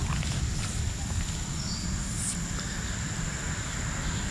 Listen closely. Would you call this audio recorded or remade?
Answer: recorded